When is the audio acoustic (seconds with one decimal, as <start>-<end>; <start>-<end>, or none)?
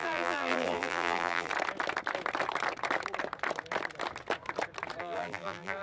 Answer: 1.5-5.0